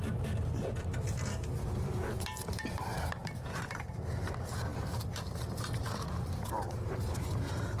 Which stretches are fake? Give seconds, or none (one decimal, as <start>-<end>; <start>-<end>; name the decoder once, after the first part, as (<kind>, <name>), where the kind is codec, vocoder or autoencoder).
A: 3.2-3.7 (vocoder, BigVGAN v2); 4.7-7.2